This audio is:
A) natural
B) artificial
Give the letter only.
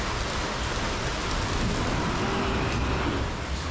A